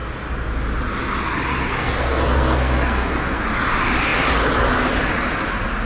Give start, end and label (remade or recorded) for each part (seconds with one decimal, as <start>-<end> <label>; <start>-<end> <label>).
0.0-1.5 recorded; 1.5-3.4 remade; 3.4-5.9 recorded

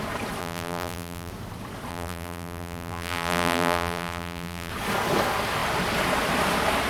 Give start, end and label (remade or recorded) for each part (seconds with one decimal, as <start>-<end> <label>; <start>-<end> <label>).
0.0-0.4 recorded; 0.4-1.3 remade; 1.3-1.9 recorded; 1.9-4.7 remade; 4.7-6.9 recorded